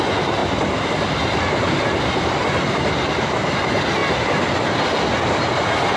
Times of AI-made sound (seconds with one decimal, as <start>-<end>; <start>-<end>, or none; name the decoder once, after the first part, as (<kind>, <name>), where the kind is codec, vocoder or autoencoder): none